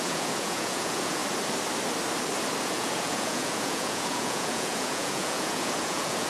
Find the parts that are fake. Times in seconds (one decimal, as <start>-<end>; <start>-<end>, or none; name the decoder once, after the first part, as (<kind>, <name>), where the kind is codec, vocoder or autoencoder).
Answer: 0.0-1.2 (vocoder, Vocos); 2.6-6.3